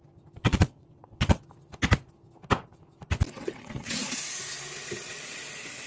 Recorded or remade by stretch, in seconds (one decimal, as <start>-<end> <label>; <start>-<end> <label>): 0.0-0.4 recorded; 0.4-1.4 remade; 1.4-3.4 recorded; 3.4-4.0 remade; 4.0-5.9 recorded